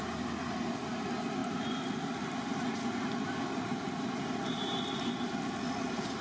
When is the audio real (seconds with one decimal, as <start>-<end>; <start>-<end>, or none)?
0.0-6.2